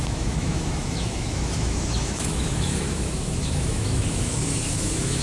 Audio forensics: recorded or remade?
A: remade